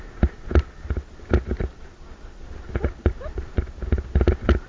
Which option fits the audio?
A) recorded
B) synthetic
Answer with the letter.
A